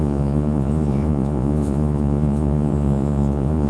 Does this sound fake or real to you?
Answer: fake